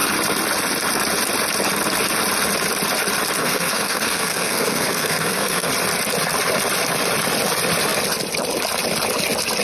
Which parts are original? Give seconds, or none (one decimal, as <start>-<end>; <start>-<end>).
0.0-3.4; 5.7-9.6